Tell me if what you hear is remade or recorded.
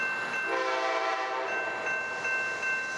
recorded